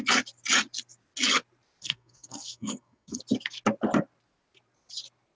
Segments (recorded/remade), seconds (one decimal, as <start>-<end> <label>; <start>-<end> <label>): 0.0-1.8 recorded; 1.8-3.2 remade; 3.2-5.4 recorded